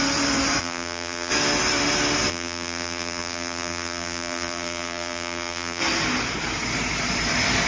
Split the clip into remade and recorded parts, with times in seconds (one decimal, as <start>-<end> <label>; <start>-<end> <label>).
0.0-0.6 recorded; 0.6-1.3 remade; 1.3-2.3 recorded; 2.3-5.8 remade; 5.8-7.7 recorded